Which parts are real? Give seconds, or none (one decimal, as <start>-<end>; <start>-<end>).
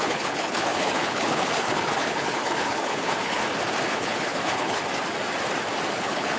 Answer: 3.4-3.9; 4.8-5.9